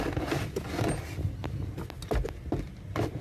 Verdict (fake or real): real